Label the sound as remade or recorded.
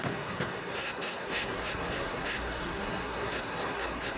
remade